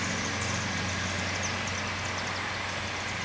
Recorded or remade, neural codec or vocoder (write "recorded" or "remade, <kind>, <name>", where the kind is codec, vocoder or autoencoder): recorded